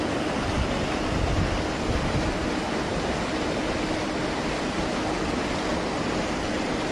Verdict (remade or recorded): recorded